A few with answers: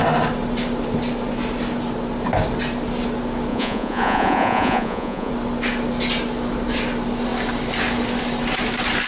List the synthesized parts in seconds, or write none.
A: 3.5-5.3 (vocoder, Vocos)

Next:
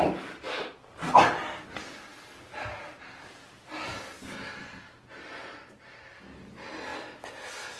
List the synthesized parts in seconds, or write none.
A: none